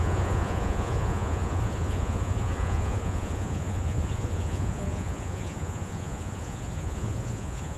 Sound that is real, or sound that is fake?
fake